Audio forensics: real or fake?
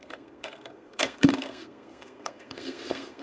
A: fake